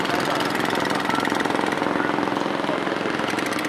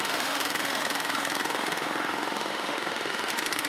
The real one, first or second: first